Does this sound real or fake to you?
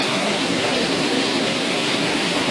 fake